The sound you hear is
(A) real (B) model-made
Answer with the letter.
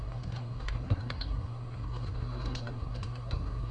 B